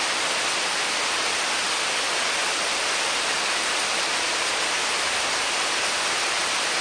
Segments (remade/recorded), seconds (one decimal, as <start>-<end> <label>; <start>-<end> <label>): 0.0-6.8 recorded